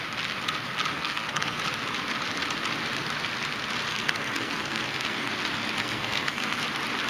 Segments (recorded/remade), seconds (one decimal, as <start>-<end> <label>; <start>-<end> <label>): 0.0-0.9 recorded; 0.9-1.6 remade; 1.6-3.9 recorded; 3.9-5.3 remade; 5.3-5.8 recorded; 5.8-6.6 remade; 6.6-7.1 recorded